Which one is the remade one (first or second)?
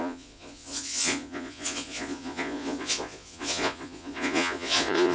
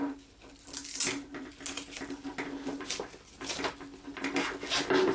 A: first